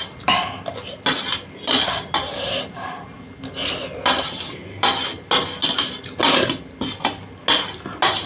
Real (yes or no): yes